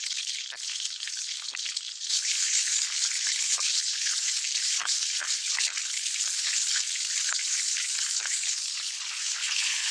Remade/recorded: remade